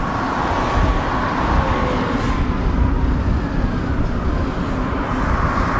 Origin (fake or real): real